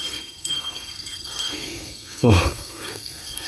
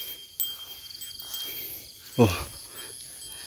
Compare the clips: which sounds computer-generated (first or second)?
first